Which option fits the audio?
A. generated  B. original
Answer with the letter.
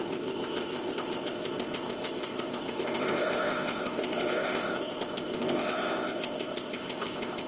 A